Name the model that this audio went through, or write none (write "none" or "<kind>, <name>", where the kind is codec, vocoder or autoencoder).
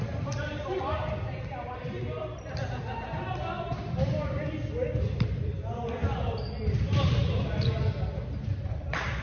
none